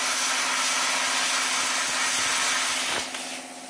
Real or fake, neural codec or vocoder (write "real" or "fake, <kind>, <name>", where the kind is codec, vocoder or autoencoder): real